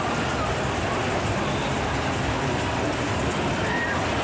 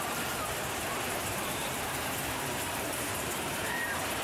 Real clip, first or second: first